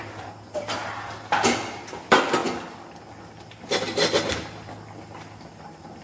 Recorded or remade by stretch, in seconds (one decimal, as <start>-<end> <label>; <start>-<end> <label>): 0.0-6.0 recorded